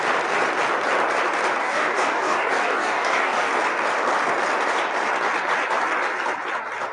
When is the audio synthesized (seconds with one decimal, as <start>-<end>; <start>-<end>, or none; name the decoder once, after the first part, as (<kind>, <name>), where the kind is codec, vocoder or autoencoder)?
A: 1.6-3.5 (codec, DAC)